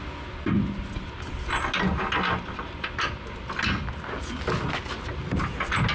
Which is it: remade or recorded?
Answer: recorded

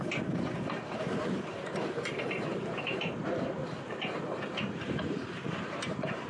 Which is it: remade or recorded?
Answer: remade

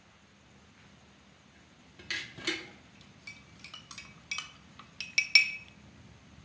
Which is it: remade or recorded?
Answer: recorded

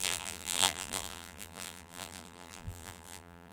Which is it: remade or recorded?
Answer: remade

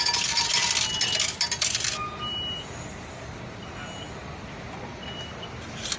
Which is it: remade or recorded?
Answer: recorded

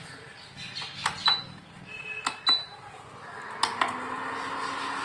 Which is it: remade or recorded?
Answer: recorded